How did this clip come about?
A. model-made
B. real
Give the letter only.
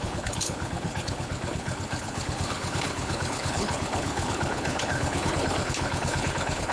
A